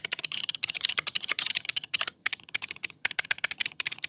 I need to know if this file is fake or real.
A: fake